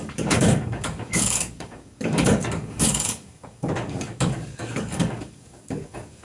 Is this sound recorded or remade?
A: remade